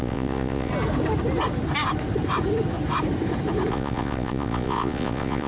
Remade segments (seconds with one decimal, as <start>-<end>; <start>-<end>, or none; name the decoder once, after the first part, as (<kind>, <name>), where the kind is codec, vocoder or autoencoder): 0.0-0.7 (vocoder, Vocos); 3.7-5.5